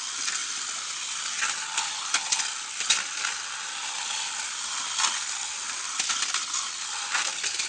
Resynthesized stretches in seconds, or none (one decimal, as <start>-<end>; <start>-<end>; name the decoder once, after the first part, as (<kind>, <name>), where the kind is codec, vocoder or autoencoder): none

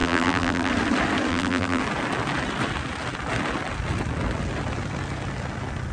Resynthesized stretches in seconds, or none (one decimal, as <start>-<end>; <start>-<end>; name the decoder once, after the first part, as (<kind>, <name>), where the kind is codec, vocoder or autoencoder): 0.0-0.7 (vocoder, BigVGAN v2); 1.3-1.8

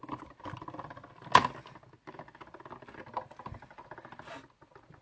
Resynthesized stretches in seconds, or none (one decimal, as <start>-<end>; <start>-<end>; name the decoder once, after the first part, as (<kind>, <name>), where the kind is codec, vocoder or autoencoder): none

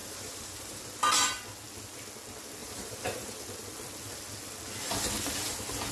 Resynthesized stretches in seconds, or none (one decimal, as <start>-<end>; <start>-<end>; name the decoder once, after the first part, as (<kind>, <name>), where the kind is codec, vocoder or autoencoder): 0.0-0.8 (vocoder, BigVGAN v2); 2.6-3.4